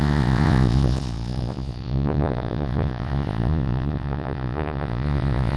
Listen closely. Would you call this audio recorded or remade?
remade